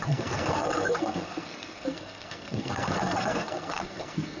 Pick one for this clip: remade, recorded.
remade